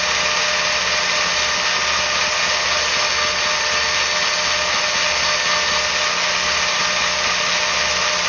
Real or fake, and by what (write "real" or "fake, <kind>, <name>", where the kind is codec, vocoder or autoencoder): real